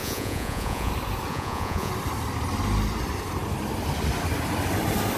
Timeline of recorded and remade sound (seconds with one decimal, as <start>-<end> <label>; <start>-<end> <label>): 0.0-0.9 remade; 0.9-1.3 recorded; 1.3-1.9 remade; 1.9-5.2 recorded